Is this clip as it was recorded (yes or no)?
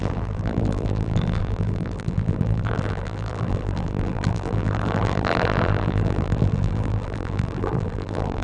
no